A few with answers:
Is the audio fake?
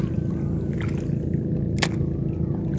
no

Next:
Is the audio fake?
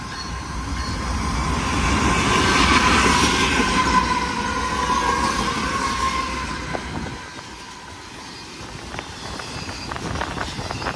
no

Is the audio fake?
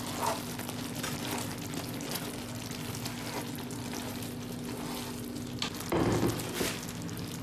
no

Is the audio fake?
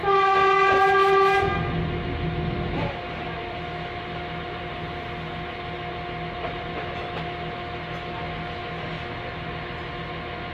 no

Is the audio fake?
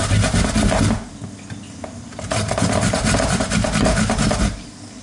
no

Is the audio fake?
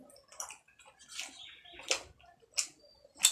no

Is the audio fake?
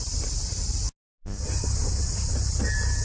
no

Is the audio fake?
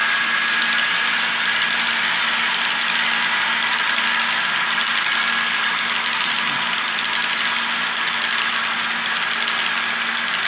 no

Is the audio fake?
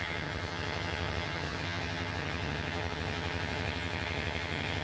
yes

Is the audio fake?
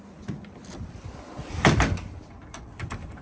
no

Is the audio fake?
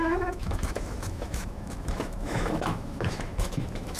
yes